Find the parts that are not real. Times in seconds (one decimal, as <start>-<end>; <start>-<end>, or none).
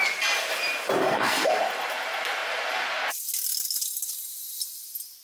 1.0-1.6